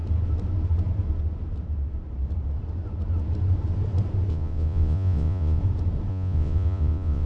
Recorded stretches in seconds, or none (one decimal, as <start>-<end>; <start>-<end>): 0.0-4.3; 5.6-6.1